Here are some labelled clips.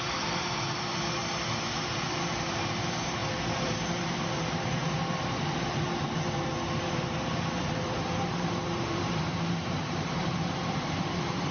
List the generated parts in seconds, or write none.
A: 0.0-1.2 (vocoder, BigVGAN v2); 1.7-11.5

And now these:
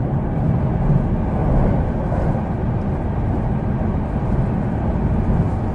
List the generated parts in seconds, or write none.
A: none

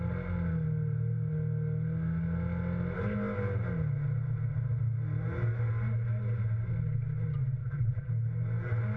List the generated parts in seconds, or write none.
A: 7.6-8.1 (vocoder, BigVGAN v2)

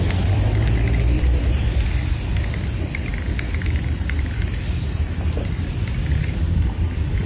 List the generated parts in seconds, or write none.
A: 0.0-3.1 (vocoder, BigVGAN v2); 4.0-7.3